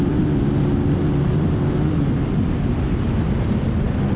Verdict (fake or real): real